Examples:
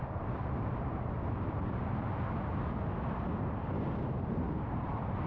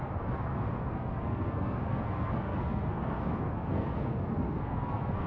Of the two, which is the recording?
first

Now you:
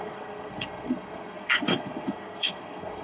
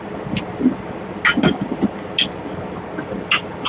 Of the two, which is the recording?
second